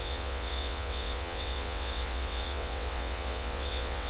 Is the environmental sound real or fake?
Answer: fake